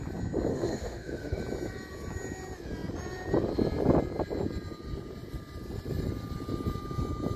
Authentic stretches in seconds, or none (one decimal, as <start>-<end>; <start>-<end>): 0.0-0.5; 1.4-7.4